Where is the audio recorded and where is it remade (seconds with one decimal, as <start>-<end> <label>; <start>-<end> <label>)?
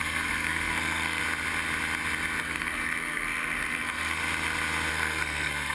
0.0-1.2 remade; 1.2-2.4 recorded; 2.4-4.2 remade; 4.2-4.9 recorded; 4.9-5.7 remade